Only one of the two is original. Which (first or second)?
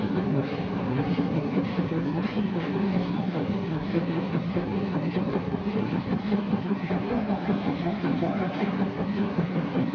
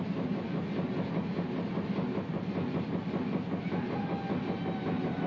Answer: second